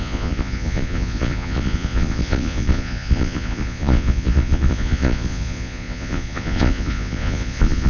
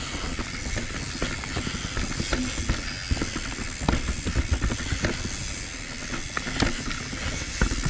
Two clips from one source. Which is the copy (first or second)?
first